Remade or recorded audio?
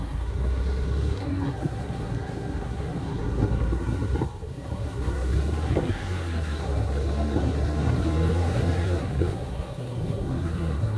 remade